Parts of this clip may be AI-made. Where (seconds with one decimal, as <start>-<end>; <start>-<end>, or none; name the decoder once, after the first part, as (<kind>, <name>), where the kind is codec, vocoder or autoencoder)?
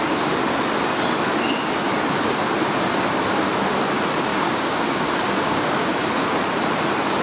4.3-6.0 (codec, DAC)